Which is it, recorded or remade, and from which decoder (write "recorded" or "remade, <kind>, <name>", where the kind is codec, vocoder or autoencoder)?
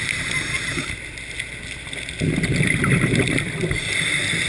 recorded